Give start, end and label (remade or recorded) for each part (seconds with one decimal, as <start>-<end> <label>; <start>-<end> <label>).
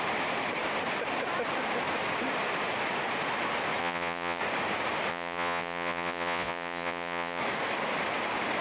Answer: 0.0-3.8 recorded; 3.8-4.4 remade; 4.4-5.1 recorded; 5.1-7.4 remade; 7.4-8.6 recorded